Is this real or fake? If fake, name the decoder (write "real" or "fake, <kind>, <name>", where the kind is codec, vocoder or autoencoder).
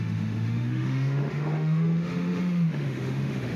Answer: fake, autoencoder, DAC-VAE